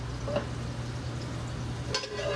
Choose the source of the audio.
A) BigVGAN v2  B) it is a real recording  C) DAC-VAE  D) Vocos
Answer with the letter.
B